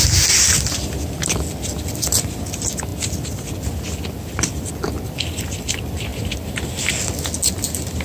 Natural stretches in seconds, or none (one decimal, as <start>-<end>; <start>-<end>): 0.0-8.0